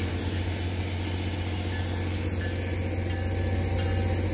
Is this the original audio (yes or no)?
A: yes